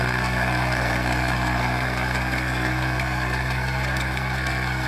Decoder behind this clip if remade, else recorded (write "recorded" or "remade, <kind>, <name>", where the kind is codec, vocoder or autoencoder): remade, codec, SNAC